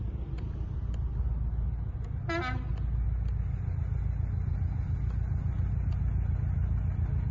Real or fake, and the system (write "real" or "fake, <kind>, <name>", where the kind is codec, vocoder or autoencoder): real